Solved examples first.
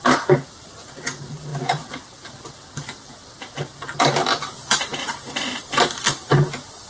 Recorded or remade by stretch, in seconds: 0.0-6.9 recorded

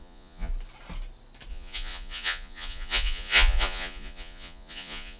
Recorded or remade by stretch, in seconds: 0.0-0.5 remade; 0.5-1.5 recorded; 1.5-5.2 remade

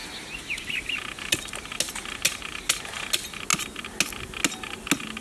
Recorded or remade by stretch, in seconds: 0.0-5.2 recorded

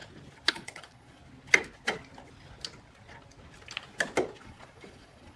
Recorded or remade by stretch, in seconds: 0.0-0.5 recorded; 0.5-1.2 remade; 1.2-4.4 recorded; 4.4-5.4 remade

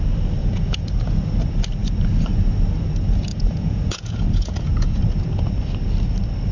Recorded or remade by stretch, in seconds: 0.0-0.4 recorded; 0.4-1.1 remade; 1.1-3.3 recorded; 3.3-5.0 remade; 5.0-6.5 recorded

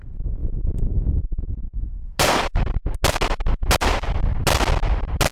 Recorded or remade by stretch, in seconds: 0.0-5.3 recorded

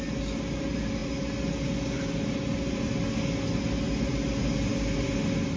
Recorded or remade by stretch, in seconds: 0.0-5.6 recorded